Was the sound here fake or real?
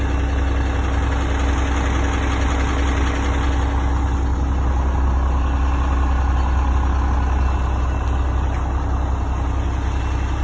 real